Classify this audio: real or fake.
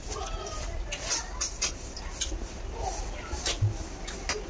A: real